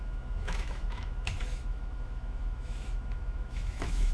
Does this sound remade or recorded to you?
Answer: remade